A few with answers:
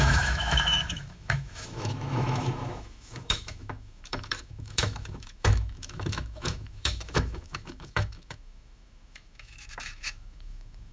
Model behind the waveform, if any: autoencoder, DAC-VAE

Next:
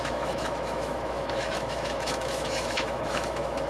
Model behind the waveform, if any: autoencoder, DAC-VAE